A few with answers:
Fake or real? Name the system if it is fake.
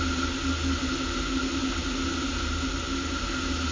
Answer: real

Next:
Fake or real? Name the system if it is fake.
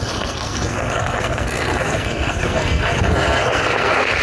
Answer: fake, codec, SNAC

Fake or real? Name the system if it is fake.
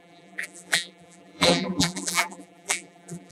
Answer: fake, vocoder, BigVGAN v2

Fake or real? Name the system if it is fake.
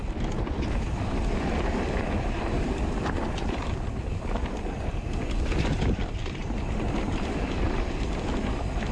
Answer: fake, vocoder, BigVGAN v2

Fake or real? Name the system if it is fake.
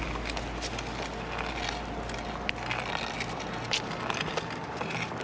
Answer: real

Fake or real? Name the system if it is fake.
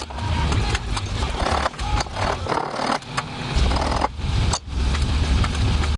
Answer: real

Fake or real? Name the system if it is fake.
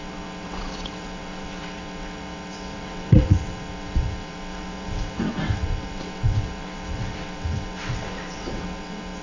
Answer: fake, vocoder, WaveNeXt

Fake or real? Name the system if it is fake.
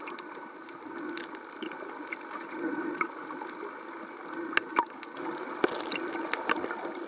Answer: real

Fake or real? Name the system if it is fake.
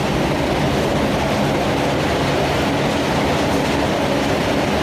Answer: real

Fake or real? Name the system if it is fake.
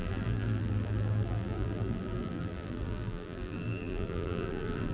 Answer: fake, vocoder, BigVGAN v2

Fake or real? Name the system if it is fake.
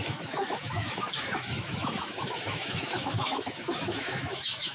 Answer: fake, autoencoder, DAC-VAE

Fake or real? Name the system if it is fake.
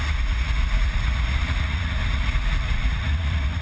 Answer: fake, vocoder, Vocos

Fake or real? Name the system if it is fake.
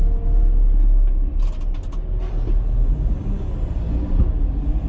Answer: real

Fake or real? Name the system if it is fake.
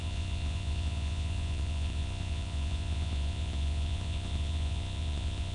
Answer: fake, vocoder, Vocos